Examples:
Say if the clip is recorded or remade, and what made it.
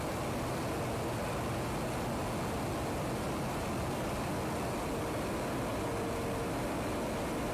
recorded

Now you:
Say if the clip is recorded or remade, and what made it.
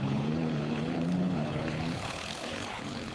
remade, codec, HILCodec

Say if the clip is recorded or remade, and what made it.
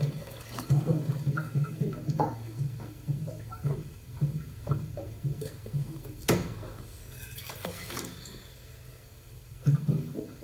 remade, codec, SNAC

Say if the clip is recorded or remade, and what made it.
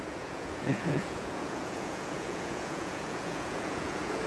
remade, vocoder, Vocos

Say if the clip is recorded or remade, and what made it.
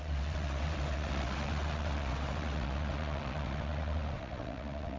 remade, vocoder, WaveNeXt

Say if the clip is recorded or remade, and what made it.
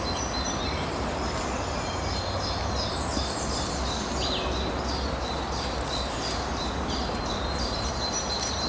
recorded